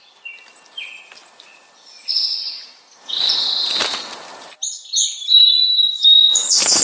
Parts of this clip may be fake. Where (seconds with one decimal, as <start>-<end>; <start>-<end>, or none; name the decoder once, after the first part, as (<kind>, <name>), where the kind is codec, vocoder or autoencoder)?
5.7-6.8 (codec, DAC)